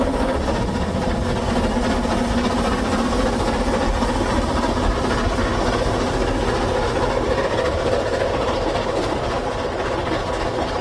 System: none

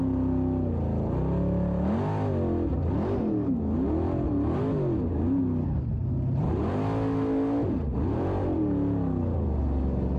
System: none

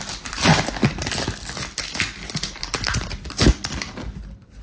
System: vocoder, BigVGAN v2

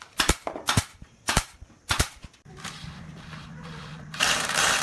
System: vocoder, BigVGAN v2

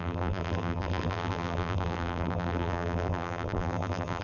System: vocoder, BigVGAN v2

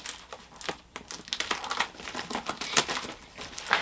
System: none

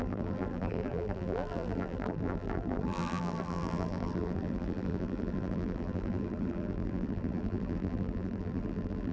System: vocoder, BigVGAN v2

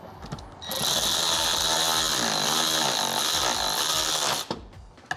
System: none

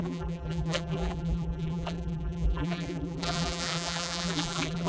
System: vocoder, BigVGAN v2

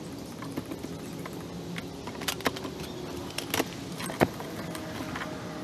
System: none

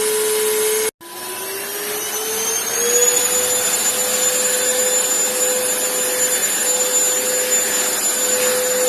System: none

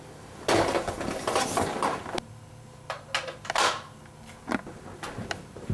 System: none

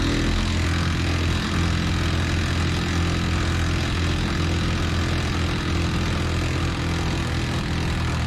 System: none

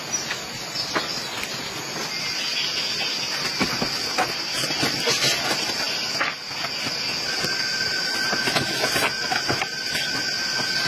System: none